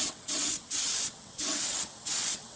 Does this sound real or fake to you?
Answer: fake